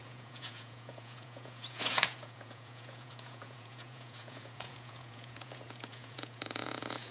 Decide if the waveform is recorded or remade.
remade